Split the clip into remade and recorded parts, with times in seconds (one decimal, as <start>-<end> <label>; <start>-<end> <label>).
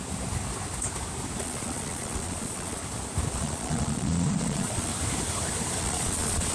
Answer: 0.0-1.4 recorded; 1.4-2.8 remade; 2.8-3.3 recorded; 3.3-4.9 remade; 4.9-5.8 recorded; 5.8-6.5 remade